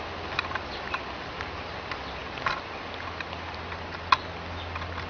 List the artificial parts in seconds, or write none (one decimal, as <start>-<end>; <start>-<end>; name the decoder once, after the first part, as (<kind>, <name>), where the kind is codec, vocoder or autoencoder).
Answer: none